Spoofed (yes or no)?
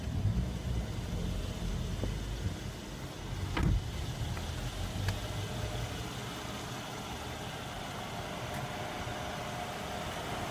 no